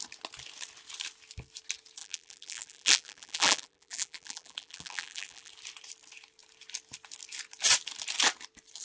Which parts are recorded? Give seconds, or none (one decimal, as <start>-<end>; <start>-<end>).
0.0-2.0; 5.5-8.8